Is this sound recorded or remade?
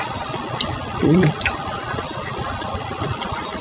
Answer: recorded